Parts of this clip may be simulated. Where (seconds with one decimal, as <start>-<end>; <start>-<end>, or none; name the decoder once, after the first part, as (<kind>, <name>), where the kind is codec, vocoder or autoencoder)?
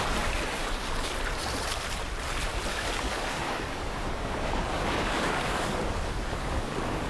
0.6-1.1 (codec, DAC); 2.7-7.1